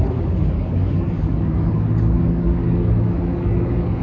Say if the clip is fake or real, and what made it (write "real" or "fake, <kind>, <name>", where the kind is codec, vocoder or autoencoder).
fake, codec, DAC